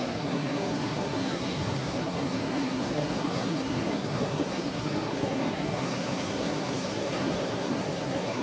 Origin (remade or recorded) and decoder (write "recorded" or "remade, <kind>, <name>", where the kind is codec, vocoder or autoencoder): remade, codec, SNAC